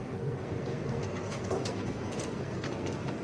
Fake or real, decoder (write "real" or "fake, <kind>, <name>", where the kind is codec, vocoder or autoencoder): fake, codec, SNAC